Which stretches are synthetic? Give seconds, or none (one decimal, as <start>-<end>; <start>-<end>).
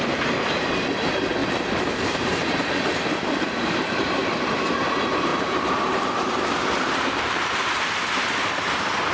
1.4-4.4; 5.3-7.8